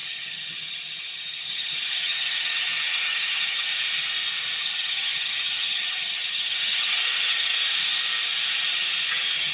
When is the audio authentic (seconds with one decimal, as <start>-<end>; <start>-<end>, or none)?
3.7-4.6; 7.5-9.1